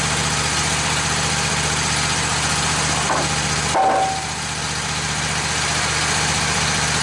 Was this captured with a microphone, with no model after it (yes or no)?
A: yes